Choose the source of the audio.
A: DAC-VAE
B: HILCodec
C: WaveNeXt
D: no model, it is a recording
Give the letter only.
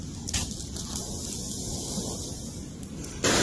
D